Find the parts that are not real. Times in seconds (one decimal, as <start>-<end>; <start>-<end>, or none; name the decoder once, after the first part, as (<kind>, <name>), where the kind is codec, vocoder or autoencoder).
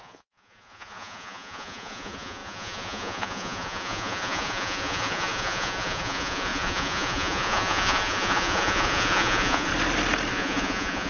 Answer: 0.0-9.7 (vocoder, Vocos); 10.3-11.1